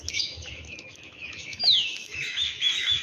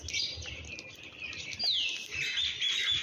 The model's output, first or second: first